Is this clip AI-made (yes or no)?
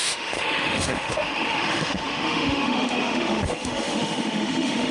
yes